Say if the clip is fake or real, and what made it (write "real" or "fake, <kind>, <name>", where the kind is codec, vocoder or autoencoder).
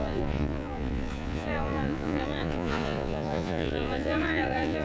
fake, vocoder, Vocos